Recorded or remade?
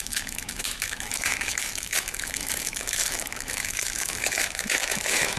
remade